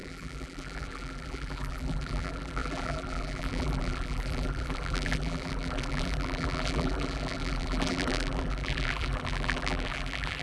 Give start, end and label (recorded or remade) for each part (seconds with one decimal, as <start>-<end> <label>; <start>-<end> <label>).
0.0-10.4 remade